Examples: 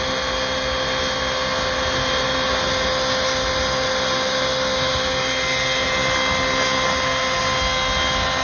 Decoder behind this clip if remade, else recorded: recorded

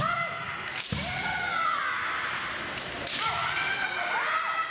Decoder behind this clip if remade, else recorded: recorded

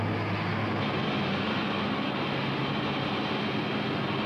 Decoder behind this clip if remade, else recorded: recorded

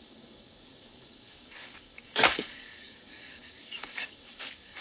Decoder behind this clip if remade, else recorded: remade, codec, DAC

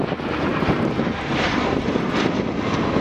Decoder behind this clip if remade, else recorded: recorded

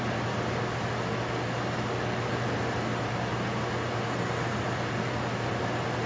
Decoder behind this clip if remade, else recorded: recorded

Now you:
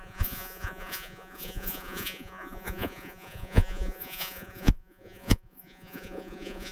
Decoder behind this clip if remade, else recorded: remade, vocoder, Vocos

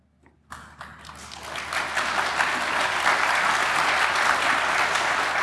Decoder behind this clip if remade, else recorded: recorded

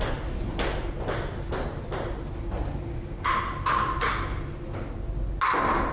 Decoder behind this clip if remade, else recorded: recorded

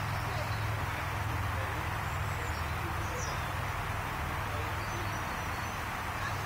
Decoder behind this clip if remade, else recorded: remade, vocoder, BigVGAN v2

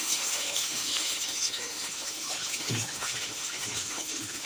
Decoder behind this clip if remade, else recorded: remade, autoencoder, DAC-VAE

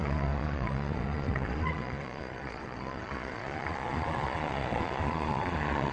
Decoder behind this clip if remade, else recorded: remade, vocoder, Vocos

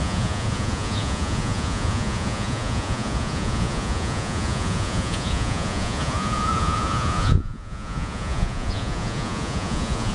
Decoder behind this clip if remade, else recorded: remade, vocoder, Vocos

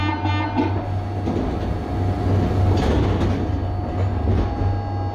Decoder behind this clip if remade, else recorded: recorded